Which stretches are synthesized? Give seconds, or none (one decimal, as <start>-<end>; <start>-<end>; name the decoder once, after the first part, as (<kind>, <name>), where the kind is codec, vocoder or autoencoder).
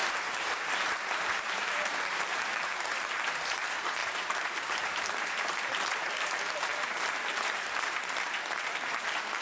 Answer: 0.0-9.4 (vocoder, BigVGAN v2)